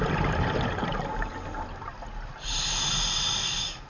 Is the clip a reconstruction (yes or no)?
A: no